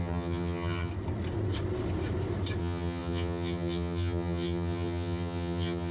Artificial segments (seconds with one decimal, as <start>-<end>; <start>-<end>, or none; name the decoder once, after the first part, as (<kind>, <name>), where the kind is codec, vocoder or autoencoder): 0.0-0.9 (vocoder, HiFi-GAN); 2.6-5.9